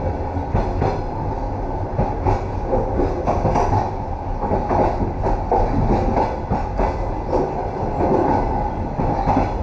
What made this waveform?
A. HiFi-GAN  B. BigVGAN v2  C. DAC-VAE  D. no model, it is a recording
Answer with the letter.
D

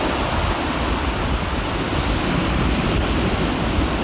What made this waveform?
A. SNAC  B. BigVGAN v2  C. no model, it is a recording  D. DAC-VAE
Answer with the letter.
C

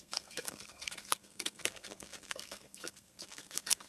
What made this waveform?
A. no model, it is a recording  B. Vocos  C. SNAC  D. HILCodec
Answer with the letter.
C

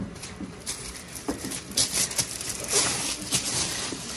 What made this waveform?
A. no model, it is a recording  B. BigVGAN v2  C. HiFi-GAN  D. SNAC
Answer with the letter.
B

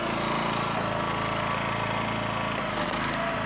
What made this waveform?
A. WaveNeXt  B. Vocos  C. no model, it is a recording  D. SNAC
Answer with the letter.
C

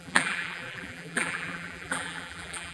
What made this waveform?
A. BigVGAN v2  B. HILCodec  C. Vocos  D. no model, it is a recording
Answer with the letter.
A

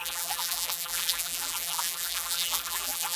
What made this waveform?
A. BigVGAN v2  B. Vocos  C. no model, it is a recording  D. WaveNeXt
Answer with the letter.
A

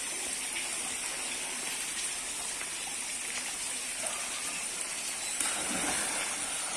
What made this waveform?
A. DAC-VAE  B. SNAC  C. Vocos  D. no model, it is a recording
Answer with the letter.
D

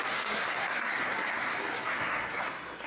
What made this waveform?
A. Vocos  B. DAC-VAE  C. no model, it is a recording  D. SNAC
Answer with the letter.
D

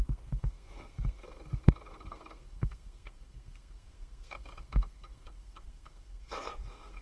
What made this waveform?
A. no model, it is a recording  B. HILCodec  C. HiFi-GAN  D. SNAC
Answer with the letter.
D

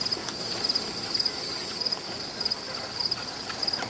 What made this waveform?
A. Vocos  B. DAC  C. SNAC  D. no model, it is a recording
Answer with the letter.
D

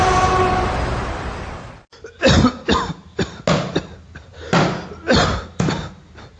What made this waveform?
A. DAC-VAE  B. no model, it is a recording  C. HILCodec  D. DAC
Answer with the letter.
B